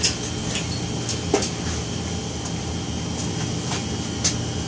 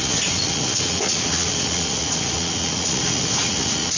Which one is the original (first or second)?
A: first